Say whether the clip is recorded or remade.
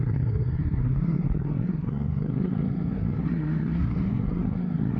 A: remade